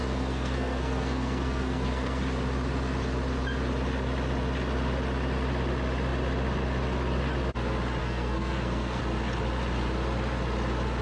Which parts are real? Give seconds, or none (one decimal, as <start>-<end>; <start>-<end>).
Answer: 2.2-8.0; 9.0-11.0